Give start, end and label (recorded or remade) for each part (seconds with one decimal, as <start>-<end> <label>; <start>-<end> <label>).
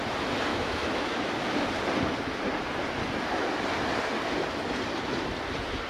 0.0-0.5 recorded; 0.5-1.3 remade; 1.3-5.9 recorded